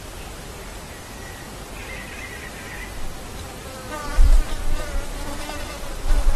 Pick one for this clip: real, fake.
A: real